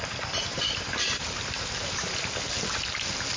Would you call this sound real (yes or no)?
yes